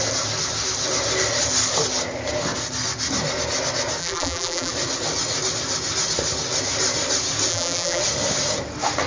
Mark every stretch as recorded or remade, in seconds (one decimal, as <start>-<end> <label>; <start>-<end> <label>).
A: 0.0-4.0 recorded; 4.0-4.7 remade; 4.7-7.5 recorded; 7.5-8.0 remade; 8.0-9.1 recorded